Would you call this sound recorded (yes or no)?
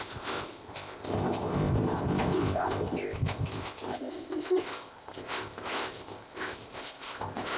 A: no